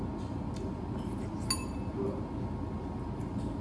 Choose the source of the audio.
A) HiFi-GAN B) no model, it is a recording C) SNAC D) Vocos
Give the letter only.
B